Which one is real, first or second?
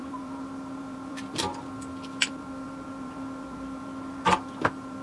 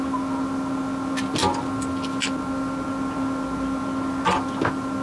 second